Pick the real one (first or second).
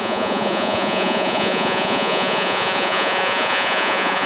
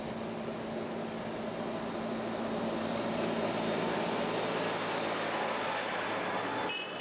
second